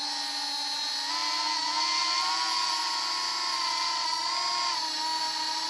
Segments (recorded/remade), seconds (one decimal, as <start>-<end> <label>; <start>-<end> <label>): 0.0-5.7 recorded